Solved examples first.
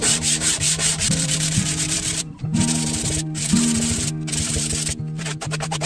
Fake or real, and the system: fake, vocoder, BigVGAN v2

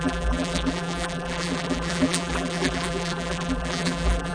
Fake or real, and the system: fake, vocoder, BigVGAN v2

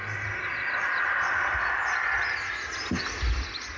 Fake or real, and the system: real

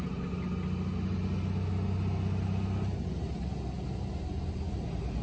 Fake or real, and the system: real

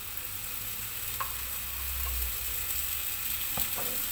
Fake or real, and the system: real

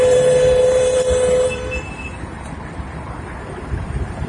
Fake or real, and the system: fake, vocoder, BigVGAN v2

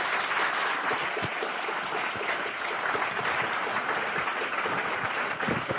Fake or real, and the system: real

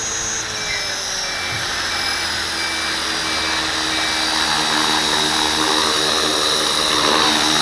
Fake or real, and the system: real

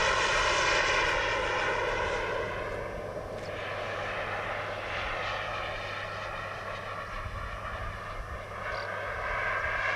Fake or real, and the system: real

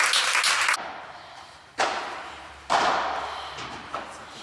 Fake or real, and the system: real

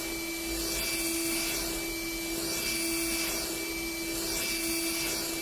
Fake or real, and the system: real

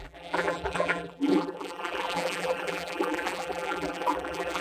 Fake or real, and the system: fake, vocoder, BigVGAN v2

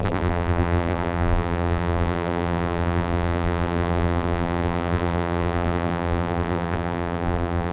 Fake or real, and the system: fake, vocoder, BigVGAN v2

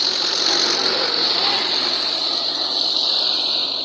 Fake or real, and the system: fake, vocoder, BigVGAN v2